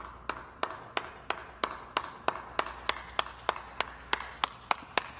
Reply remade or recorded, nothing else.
recorded